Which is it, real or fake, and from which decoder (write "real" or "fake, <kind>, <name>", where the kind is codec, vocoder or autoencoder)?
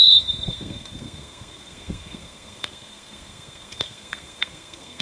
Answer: fake, codec, SNAC